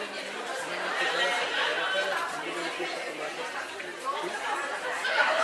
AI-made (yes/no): yes